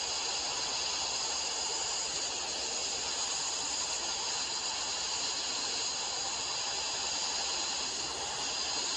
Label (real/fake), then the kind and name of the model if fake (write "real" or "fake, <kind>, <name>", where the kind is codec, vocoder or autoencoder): real